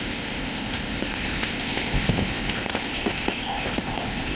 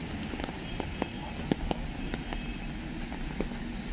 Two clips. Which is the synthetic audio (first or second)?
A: first